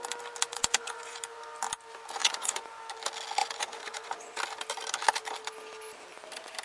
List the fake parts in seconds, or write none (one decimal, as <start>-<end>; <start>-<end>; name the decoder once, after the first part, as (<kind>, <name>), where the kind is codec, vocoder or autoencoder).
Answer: 0.5-1.2 (vocoder, Vocos); 2.2-2.8; 3.4-4.4